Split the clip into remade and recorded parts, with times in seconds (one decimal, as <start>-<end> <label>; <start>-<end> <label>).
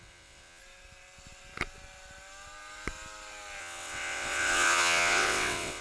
0.0-0.6 remade; 0.6-3.6 recorded; 3.6-5.8 remade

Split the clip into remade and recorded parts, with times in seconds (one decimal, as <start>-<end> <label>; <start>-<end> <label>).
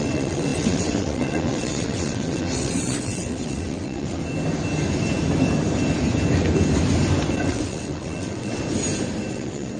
0.0-4.2 remade; 4.2-7.5 recorded; 7.5-8.6 remade; 8.6-9.3 recorded; 9.3-9.8 remade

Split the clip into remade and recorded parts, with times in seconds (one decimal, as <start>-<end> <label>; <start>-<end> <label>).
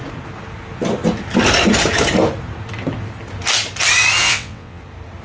0.0-4.2 recorded; 4.2-4.8 remade; 4.8-5.2 recorded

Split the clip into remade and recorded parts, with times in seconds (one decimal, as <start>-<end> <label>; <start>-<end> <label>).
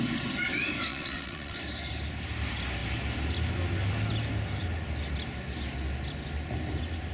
0.0-0.9 recorded; 0.9-1.6 remade; 1.6-7.1 recorded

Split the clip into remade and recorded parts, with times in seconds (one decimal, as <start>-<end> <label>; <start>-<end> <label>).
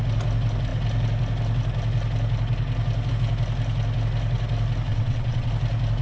0.0-4.9 recorded; 4.9-5.5 remade; 5.5-6.0 recorded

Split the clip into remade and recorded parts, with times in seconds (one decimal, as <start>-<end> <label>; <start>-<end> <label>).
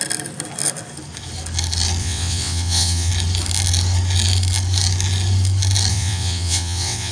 0.0-2.0 recorded; 2.0-3.1 remade; 3.1-5.9 recorded; 5.9-7.1 remade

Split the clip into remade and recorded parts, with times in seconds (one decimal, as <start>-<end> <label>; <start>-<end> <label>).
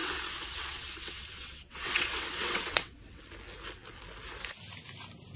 0.0-3.2 remade; 3.2-5.4 recorded